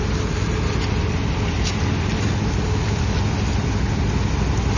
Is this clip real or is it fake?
real